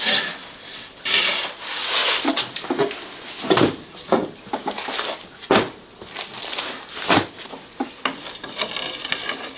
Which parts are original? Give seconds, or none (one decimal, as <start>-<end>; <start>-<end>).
0.0-9.6